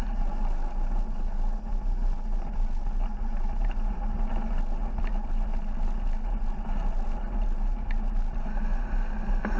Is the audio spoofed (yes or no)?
no